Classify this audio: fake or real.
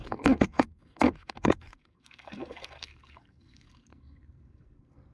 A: fake